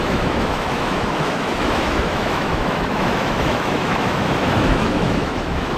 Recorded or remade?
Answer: remade